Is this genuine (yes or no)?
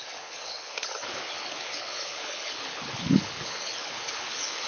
no